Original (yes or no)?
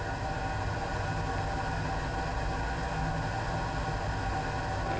yes